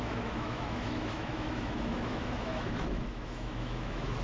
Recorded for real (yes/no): no